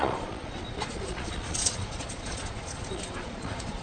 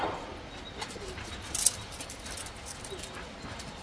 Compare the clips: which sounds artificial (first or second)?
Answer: first